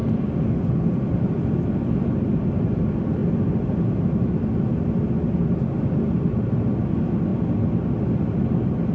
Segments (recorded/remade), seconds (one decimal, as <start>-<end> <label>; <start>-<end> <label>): 0.0-8.9 recorded